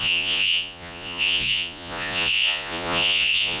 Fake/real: fake